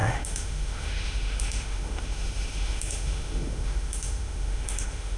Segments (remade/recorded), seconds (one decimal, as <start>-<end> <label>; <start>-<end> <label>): 0.0-5.2 remade

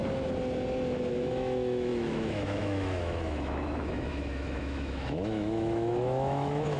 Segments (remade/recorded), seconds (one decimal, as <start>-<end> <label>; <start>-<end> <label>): 0.0-1.1 recorded; 1.1-6.8 remade

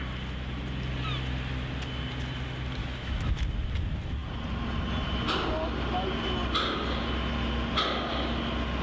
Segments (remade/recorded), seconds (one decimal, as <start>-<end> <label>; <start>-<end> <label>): 0.0-2.8 recorded; 2.8-3.4 remade; 3.4-8.8 recorded

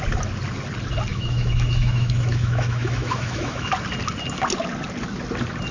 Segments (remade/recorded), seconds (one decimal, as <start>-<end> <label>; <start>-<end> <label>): 0.0-1.1 recorded; 1.1-3.7 remade; 3.7-5.7 recorded

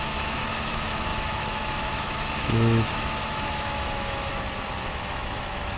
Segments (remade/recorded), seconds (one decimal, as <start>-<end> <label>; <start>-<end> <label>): 0.0-4.3 remade; 4.3-4.9 recorded; 4.9-5.8 remade

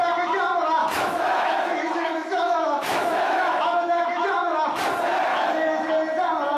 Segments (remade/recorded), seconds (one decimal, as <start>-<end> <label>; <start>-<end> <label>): 0.0-0.8 recorded; 0.8-4.8 remade; 4.8-5.3 recorded; 5.3-5.9 remade; 5.9-6.6 recorded

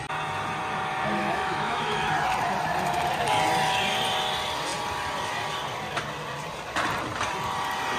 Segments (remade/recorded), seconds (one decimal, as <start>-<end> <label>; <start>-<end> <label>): 0.0-1.2 recorded; 1.2-2.1 remade; 2.1-8.0 recorded